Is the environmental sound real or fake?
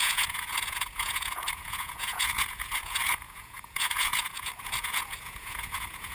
fake